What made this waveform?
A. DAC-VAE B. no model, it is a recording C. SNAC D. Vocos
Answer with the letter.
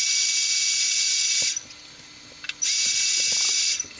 B